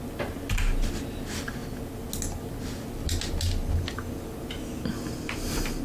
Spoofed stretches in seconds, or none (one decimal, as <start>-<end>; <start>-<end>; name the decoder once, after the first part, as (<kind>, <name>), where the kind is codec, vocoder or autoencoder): none